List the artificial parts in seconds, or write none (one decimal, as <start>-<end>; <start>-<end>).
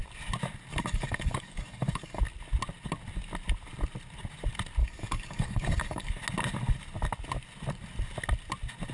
0.7-2.2; 4.8-6.1